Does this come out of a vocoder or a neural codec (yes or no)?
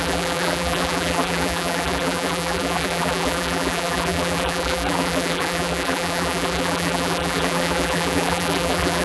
yes